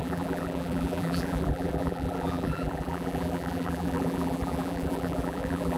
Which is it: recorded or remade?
remade